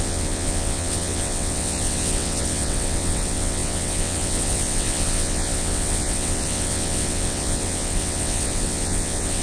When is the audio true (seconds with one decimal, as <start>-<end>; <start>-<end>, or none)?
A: none